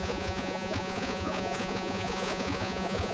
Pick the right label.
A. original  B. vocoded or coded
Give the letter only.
B